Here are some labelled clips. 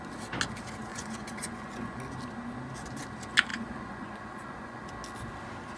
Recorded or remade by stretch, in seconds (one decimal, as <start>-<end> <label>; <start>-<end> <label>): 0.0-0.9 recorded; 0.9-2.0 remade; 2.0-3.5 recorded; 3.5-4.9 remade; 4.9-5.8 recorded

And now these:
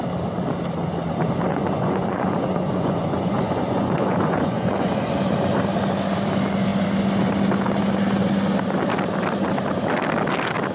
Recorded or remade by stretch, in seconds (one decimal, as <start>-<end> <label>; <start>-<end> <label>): 0.0-1.5 recorded; 1.5-5.1 remade; 5.1-10.7 recorded

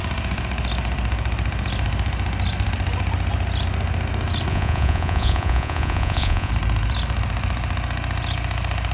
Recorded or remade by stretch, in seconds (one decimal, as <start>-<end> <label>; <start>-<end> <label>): 0.0-4.5 recorded; 4.5-6.5 remade; 6.5-8.9 recorded